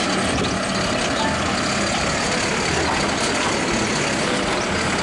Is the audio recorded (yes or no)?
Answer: yes